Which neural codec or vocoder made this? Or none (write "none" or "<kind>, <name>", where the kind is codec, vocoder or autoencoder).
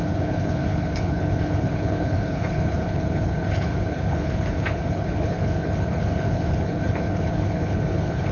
codec, HILCodec